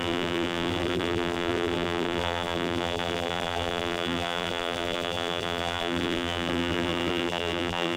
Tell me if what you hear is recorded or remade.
remade